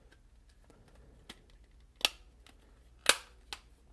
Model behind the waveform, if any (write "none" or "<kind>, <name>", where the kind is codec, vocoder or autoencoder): none